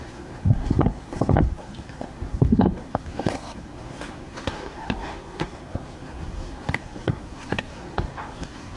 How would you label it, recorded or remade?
remade